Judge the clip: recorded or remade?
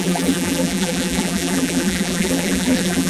remade